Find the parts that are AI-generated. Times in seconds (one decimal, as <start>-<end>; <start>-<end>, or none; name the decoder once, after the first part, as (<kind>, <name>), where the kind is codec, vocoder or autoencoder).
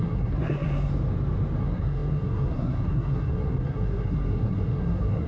0.0-0.9 (codec, SNAC); 1.6-5.3